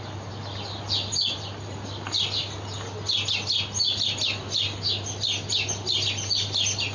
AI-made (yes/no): no